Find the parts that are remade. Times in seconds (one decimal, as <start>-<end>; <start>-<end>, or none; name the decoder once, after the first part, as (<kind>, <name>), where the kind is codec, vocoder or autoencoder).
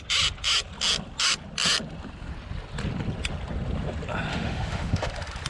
4.3-5.1 (autoencoder, DAC-VAE)